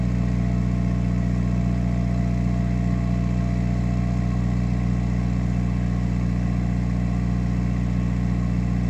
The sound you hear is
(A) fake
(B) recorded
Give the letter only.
B